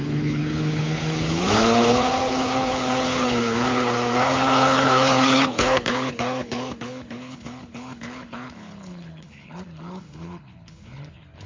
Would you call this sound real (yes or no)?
no